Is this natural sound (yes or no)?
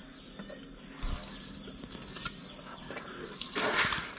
yes